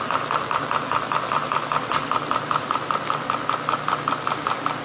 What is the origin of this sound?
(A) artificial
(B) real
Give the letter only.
B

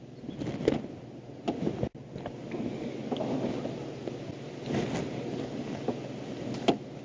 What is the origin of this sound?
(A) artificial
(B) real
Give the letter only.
B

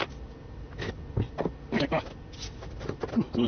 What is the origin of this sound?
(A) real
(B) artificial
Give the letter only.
A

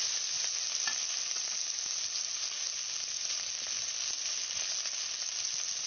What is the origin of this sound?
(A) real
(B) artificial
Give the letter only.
A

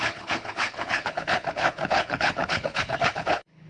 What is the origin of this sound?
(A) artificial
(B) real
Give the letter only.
A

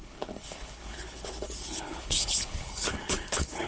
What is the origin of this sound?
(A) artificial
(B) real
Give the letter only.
A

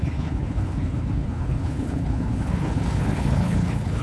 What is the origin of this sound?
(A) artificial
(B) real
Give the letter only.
A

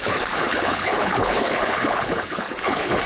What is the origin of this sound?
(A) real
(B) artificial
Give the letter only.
B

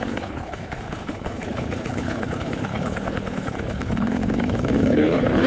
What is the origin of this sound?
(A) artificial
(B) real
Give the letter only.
A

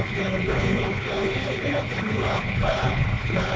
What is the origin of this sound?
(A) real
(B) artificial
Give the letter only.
B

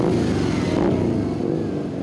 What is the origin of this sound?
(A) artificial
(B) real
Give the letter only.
B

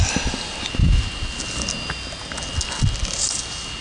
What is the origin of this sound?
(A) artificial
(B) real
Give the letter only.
B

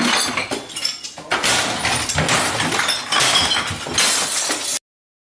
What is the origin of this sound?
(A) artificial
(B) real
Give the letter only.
B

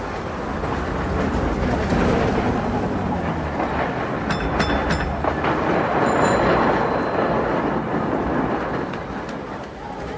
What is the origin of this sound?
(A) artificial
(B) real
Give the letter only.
B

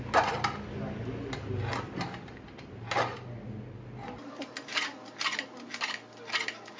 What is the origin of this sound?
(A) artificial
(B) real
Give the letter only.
B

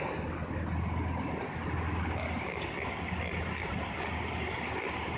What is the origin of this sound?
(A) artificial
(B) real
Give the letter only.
B